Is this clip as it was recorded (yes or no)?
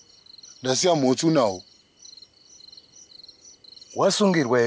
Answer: yes